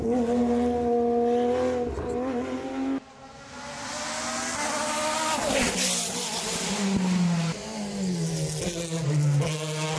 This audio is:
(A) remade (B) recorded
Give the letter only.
B